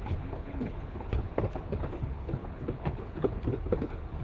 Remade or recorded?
remade